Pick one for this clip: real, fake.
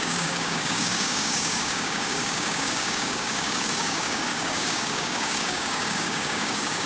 fake